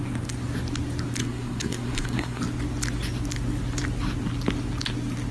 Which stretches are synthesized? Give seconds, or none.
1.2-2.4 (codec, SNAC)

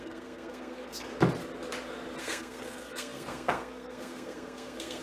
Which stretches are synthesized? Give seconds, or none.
0.0-1.1 (codec, SNAC); 2.2-5.0

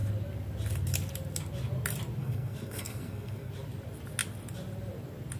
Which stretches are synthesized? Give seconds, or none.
2.2-3.5 (codec, SNAC)

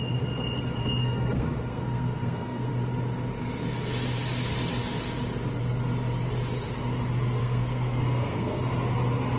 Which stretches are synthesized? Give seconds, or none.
0.8-2.7 (codec, SNAC); 7.4-8.7

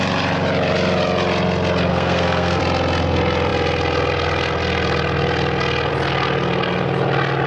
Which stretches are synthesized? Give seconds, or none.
1.9-2.6 (codec, SNAC)

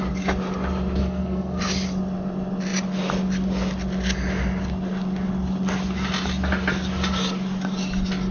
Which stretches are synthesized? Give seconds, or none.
1.0-1.6 (codec, SNAC)

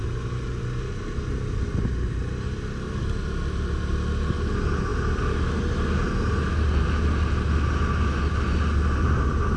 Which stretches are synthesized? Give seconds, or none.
none

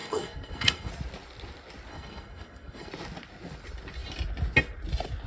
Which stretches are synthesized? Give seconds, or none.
0.0-0.9 (codec, SNAC); 1.9-2.9